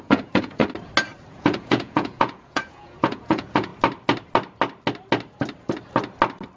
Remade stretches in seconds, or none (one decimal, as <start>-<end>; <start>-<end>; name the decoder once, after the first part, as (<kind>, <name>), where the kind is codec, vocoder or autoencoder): 0.0-0.6 (vocoder, Vocos); 1.3-3.7